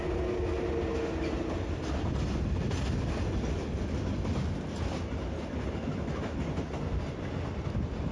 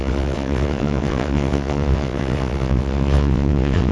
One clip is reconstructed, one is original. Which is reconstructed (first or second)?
second